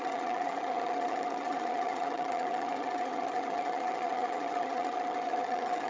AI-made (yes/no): yes